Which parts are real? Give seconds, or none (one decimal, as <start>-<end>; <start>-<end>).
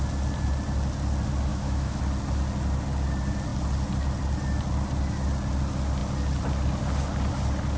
0.0-1.5; 2.0-7.8